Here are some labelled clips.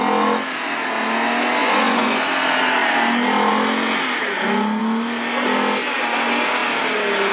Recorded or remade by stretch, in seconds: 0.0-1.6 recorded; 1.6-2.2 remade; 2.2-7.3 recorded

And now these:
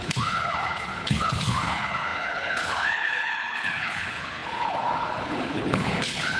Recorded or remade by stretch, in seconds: 0.0-6.4 remade

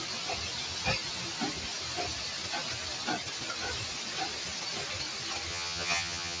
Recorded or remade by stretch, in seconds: 0.0-5.5 recorded; 5.5-6.4 remade

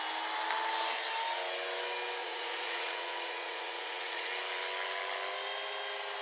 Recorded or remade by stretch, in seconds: 0.0-2.2 recorded; 2.2-4.3 remade; 4.3-6.2 recorded